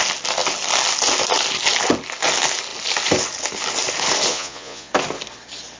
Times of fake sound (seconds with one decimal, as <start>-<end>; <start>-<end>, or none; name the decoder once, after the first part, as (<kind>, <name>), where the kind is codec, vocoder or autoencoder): 4.3-4.9 (vocoder, Vocos)